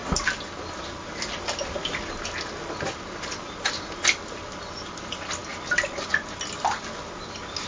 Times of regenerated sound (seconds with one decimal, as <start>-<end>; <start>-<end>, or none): none